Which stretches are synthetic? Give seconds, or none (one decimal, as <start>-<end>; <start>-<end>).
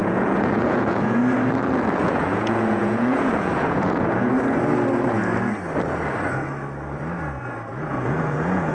0.0-1.2; 2.0-4.3; 7.8-8.7